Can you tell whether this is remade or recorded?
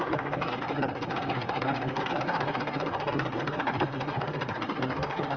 remade